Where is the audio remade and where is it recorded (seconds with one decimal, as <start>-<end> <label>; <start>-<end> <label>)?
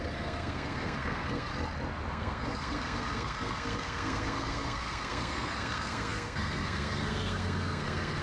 0.0-1.5 remade; 1.5-2.1 recorded; 2.1-8.2 remade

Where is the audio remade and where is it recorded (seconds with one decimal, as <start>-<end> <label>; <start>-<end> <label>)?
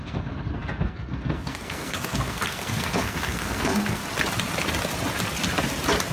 0.0-4.0 remade; 4.0-6.1 recorded